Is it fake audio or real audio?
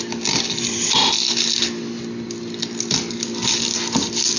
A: real